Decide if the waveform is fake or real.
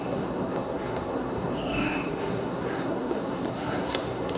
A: fake